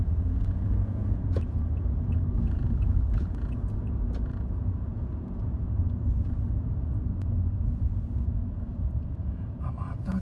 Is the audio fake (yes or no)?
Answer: yes